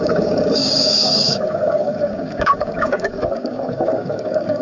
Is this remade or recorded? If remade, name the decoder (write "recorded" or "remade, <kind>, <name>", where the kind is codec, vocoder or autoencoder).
remade, codec, DAC